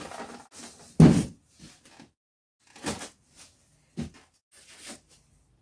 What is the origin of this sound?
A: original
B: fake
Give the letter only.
A